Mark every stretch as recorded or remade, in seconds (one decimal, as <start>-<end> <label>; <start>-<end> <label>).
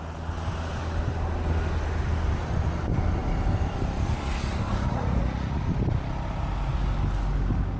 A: 0.0-4.9 recorded; 4.9-5.6 remade; 5.6-7.8 recorded